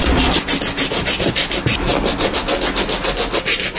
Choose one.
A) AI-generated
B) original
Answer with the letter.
B